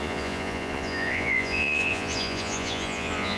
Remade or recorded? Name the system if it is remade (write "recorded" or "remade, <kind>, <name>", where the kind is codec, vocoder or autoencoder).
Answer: remade, vocoder, Vocos